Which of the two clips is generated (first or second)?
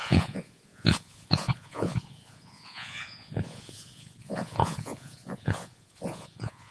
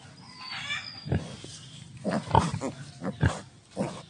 first